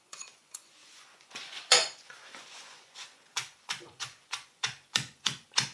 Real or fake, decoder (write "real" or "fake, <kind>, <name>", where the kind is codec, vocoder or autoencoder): fake, vocoder, Vocos